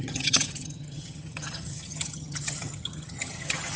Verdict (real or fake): fake